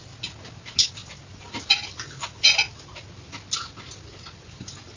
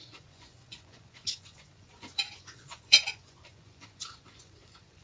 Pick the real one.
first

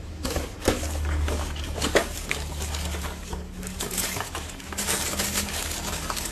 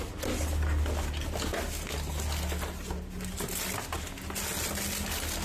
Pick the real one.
second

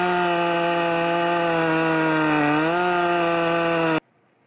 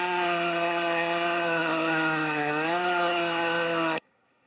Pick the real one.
first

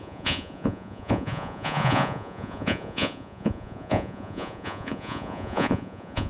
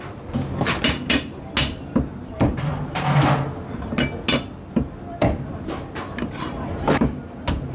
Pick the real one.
second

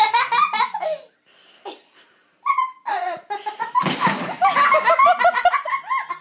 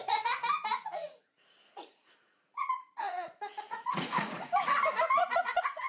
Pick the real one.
first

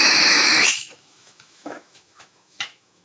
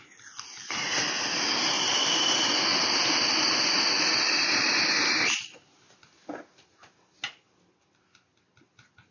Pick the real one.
second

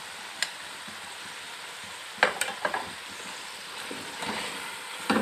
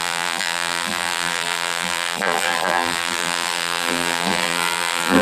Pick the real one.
first